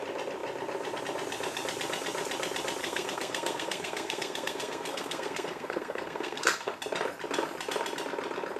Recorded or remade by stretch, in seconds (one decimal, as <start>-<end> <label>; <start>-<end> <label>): 0.0-2.8 recorded; 2.8-6.8 remade; 6.8-8.6 recorded

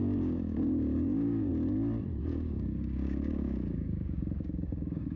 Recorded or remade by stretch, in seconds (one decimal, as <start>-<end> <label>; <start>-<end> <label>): 0.0-1.5 remade; 1.5-2.2 recorded; 2.2-5.2 remade